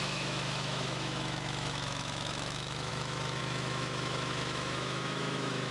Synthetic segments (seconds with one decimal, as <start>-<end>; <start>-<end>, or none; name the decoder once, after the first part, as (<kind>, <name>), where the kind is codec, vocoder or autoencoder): 0.0-5.7 (autoencoder, DAC-VAE)